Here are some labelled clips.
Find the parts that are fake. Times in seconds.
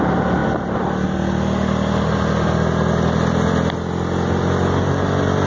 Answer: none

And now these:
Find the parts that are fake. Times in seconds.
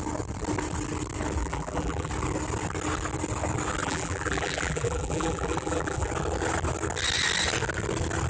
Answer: 1.4-2.1 (vocoder, BigVGAN v2); 3.8-6.1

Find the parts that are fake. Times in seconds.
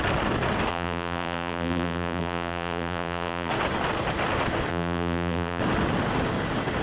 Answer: 0.7-3.5 (vocoder, BigVGAN v2); 4.7-5.6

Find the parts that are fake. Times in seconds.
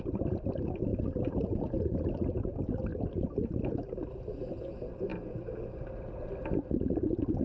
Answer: 0.9-2.1 (vocoder, BigVGAN v2)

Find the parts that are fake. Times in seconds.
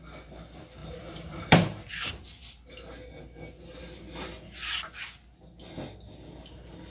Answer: 0.8-1.9 (vocoder, BigVGAN v2)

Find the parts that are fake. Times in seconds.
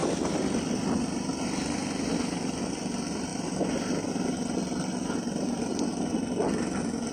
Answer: none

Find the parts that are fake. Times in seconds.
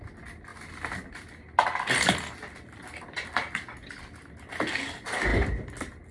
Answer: none